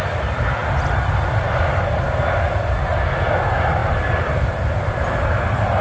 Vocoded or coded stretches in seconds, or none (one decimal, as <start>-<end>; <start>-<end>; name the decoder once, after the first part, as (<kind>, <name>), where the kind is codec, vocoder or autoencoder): 3.8-5.8 (vocoder, BigVGAN v2)